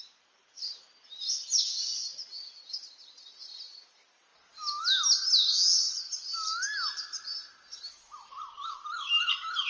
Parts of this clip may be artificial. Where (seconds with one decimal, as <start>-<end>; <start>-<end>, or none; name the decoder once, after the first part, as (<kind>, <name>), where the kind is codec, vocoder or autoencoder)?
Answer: none